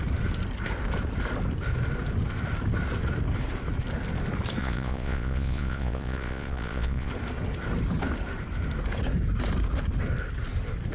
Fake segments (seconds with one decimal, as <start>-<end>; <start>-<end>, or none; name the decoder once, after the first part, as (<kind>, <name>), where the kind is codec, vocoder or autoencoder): 4.6-7.1 (vocoder, Vocos)